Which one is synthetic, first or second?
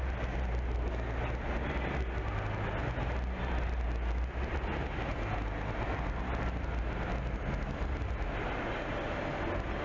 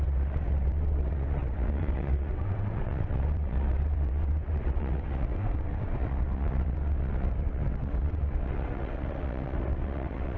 second